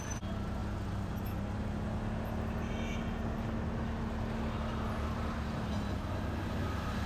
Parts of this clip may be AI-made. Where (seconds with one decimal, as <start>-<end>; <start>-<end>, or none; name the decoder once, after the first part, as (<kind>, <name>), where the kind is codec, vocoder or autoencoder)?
none